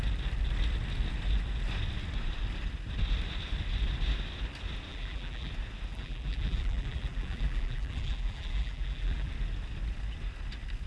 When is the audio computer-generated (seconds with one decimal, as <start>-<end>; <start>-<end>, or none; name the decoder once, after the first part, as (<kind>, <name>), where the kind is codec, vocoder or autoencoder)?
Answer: 4.9-5.5 (vocoder, BigVGAN v2); 5.9-9.3